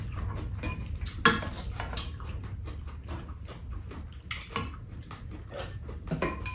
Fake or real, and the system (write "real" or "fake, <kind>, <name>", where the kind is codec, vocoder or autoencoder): real